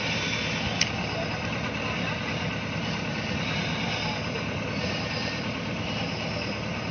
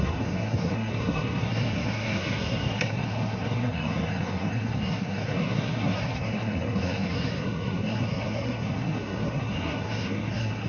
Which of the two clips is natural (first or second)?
first